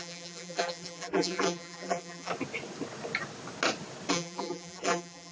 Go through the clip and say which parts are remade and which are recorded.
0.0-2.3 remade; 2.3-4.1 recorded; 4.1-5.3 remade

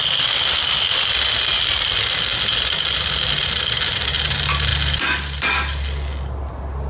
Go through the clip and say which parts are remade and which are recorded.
0.0-6.9 recorded

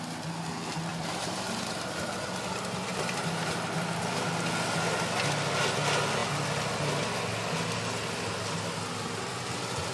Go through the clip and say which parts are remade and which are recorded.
0.0-0.9 recorded; 0.9-2.2 remade; 2.2-2.9 recorded; 2.9-4.2 remade; 4.2-9.9 recorded